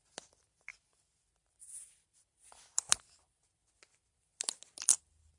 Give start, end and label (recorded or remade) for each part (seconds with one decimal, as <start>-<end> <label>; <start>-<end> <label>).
0.0-5.4 remade